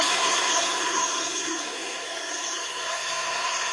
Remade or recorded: remade